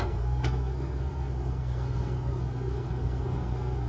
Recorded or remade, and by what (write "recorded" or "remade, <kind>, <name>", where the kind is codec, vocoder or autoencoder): remade, codec, SNAC